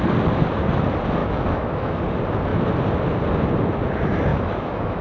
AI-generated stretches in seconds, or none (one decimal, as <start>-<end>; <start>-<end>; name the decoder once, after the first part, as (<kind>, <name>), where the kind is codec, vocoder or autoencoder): 1.2-2.0 (autoencoder, DAC-VAE); 4.3-5.0